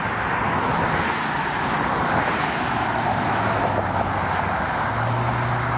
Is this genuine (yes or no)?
yes